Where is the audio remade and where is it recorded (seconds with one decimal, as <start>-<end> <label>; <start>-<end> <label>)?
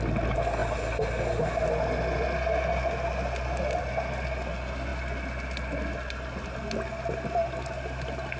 0.0-8.4 recorded